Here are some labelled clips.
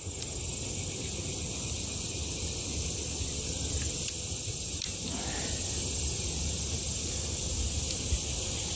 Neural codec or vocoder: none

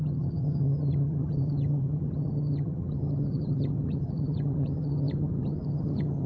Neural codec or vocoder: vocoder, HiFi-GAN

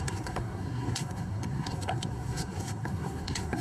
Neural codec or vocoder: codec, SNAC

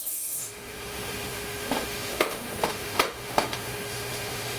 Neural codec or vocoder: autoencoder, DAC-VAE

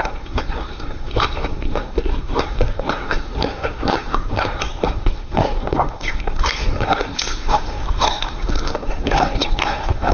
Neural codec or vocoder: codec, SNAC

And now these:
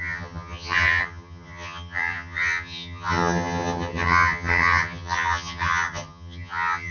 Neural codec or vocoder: vocoder, HiFi-GAN